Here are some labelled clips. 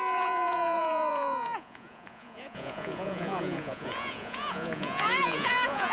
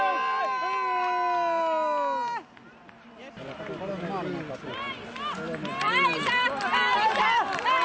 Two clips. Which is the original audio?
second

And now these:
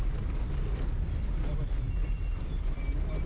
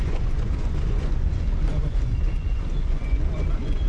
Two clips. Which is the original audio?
first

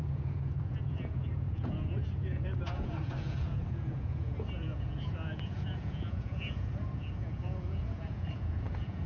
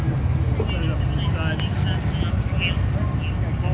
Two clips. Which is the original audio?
second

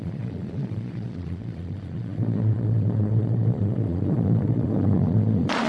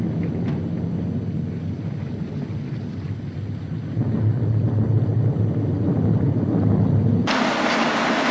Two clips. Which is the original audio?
second